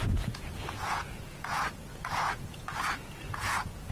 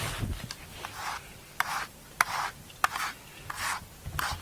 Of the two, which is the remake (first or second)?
first